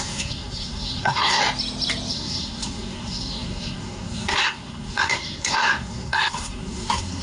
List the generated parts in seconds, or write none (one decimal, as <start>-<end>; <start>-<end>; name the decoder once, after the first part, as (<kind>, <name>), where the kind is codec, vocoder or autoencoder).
0.0-1.4 (codec, SNAC); 2.1-7.2